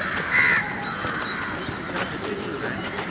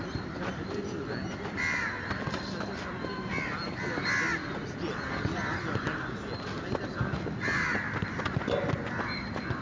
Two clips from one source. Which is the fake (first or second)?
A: first